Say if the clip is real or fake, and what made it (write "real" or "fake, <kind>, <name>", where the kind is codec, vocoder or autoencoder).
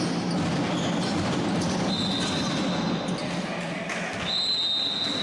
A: real